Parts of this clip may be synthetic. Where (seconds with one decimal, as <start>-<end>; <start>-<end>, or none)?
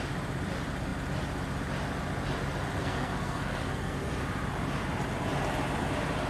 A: 2.8-4.2